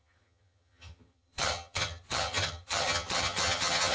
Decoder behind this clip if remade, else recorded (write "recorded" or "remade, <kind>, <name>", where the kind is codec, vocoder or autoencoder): remade, vocoder, HiFi-GAN